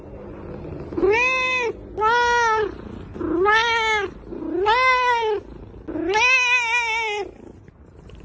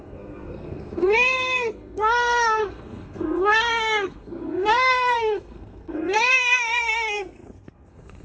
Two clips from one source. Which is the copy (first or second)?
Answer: second